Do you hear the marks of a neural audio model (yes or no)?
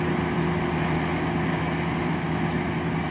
no